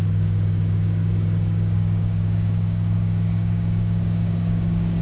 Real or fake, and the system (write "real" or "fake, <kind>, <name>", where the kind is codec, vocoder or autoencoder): fake, codec, DAC